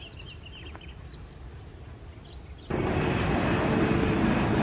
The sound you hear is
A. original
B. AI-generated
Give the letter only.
A